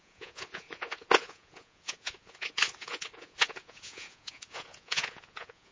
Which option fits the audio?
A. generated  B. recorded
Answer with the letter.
A